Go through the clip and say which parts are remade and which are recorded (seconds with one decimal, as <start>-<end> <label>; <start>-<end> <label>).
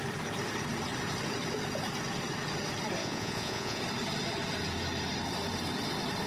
0.0-3.0 recorded; 3.0-3.8 remade; 3.8-6.3 recorded